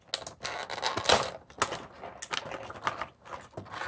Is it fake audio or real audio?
real